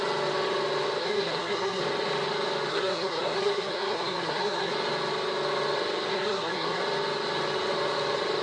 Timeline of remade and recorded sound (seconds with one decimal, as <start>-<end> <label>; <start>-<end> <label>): 0.0-1.0 recorded; 1.0-1.8 remade; 1.8-2.7 recorded; 2.7-4.7 remade; 4.7-6.1 recorded; 6.1-6.8 remade; 6.8-8.4 recorded